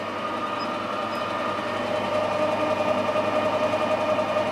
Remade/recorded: recorded